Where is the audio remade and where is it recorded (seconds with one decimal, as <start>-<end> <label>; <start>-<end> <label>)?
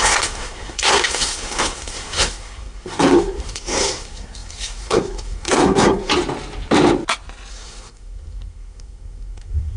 0.0-6.1 remade; 6.1-7.5 recorded; 7.5-9.8 remade